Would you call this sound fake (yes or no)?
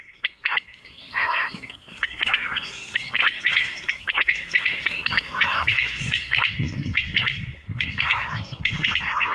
yes